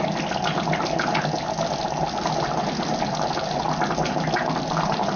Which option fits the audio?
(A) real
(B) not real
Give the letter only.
A